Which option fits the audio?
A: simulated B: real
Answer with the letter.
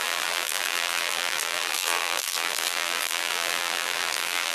A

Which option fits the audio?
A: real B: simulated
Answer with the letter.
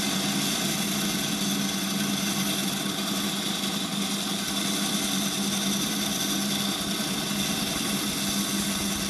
A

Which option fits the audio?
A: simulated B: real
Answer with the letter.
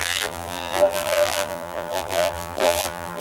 A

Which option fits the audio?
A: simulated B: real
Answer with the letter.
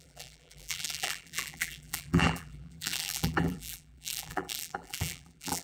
A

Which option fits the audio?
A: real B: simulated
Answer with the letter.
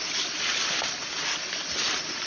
A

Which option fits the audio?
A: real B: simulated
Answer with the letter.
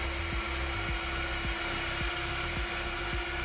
A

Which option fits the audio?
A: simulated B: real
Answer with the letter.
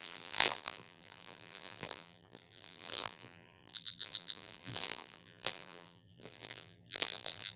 A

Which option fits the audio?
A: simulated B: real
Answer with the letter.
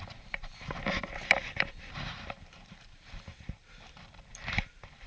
A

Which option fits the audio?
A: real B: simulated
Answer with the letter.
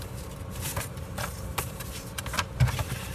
B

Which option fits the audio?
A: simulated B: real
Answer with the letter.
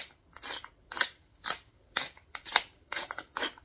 A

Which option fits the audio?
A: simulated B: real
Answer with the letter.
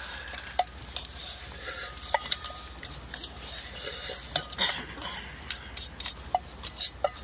B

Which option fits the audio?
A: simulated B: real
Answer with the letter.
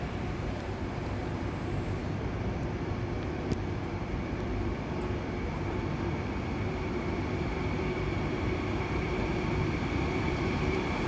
A